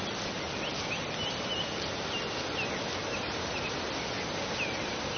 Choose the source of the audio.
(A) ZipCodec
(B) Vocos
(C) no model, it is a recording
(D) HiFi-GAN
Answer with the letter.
C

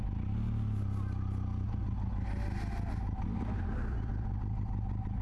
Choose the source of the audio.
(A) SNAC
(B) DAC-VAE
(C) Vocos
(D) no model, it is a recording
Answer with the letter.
D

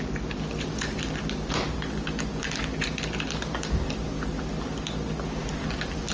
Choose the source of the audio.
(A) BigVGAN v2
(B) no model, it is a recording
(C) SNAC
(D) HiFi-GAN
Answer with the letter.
B